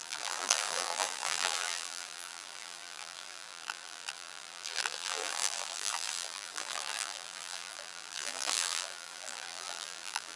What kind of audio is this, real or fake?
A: fake